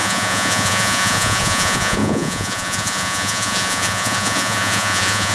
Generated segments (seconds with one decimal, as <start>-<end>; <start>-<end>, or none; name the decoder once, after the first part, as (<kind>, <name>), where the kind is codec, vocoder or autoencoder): 0.0-5.3 (vocoder, Vocos)